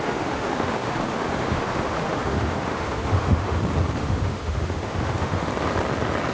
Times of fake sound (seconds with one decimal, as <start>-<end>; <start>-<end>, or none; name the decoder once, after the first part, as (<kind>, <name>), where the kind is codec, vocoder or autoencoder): 0.0-3.6 (autoencoder, DAC-VAE); 4.0-5.5